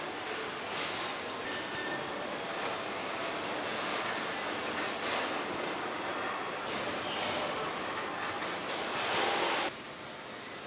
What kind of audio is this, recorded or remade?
recorded